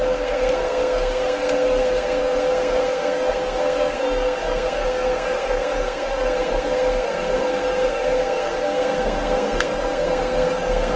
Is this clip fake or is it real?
fake